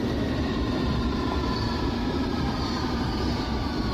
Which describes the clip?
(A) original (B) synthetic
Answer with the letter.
B